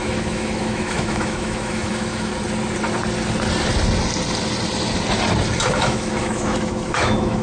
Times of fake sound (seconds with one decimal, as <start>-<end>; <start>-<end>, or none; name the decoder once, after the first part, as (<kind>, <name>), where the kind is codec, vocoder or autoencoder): 0.0-2.3 (autoencoder, DAC-VAE); 5.6-7.4